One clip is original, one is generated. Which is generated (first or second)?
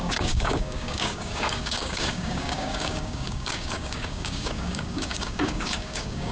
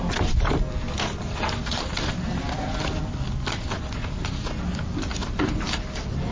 first